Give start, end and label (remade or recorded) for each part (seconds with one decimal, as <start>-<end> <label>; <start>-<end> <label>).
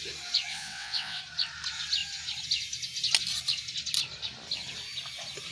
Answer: 0.0-0.5 recorded; 0.5-1.2 remade; 1.2-5.5 recorded